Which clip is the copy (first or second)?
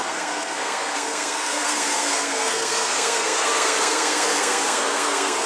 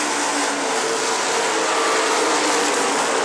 first